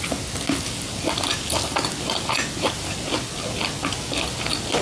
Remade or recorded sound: recorded